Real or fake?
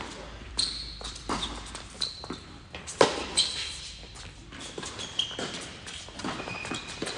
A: fake